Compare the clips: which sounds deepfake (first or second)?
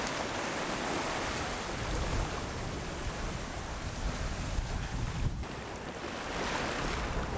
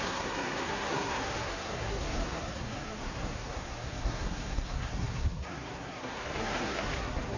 second